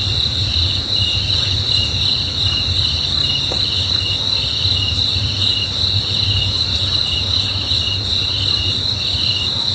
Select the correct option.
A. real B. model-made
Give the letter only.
A